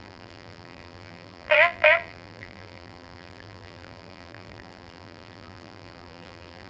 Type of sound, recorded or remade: remade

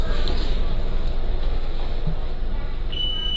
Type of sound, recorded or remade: recorded